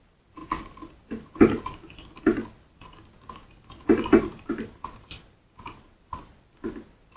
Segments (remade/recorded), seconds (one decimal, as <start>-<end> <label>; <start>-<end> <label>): 0.0-4.3 recorded; 4.3-6.1 remade; 6.1-7.2 recorded